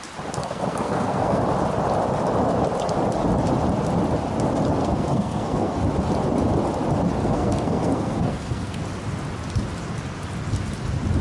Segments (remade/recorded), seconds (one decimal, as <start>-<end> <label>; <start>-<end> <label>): 0.0-0.4 recorded; 0.4-1.4 remade; 1.4-4.8 recorded; 4.8-5.8 remade; 5.8-7.2 recorded; 7.2-8.8 remade; 8.8-11.2 recorded